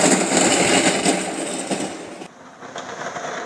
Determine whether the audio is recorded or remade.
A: recorded